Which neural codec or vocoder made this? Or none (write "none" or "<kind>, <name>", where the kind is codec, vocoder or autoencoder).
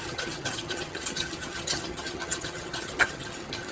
vocoder, HiFi-GAN